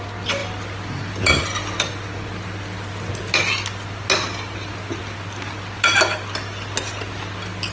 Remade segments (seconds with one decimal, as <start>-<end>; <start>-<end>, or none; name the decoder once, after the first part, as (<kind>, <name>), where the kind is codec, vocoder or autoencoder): none